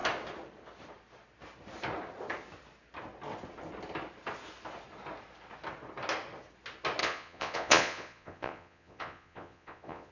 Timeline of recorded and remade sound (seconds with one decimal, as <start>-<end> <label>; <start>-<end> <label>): 0.0-7.0 recorded; 7.0-10.1 remade